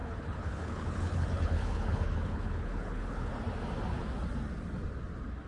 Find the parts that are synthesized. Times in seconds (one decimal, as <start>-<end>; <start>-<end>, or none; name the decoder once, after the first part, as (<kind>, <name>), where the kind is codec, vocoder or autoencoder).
0.0-3.3 (codec, HILCodec)